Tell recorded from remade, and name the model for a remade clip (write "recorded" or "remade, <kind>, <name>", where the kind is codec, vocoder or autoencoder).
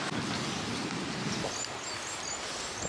recorded